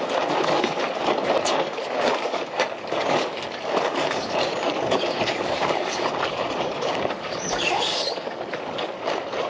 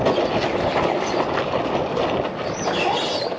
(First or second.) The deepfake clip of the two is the first